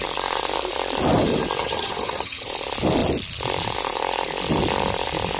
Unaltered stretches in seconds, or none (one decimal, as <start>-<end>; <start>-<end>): 0.0-1.6; 2.5-5.4